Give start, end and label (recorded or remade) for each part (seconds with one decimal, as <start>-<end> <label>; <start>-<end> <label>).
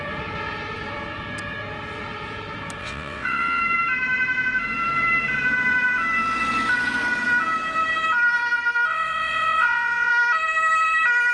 0.0-2.8 recorded; 2.8-3.6 remade; 3.6-8.9 recorded; 8.9-10.1 remade; 10.1-11.3 recorded